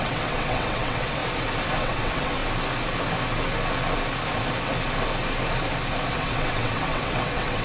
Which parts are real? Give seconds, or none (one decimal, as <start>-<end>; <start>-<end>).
1.2-1.8; 2.4-6.1